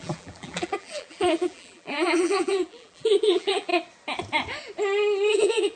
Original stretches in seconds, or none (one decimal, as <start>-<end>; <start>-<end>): 3.7-5.3